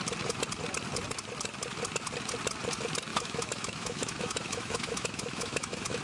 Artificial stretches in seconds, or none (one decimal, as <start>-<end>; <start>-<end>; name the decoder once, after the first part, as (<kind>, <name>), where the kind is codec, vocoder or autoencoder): 3.1-6.0 (autoencoder, DAC-VAE)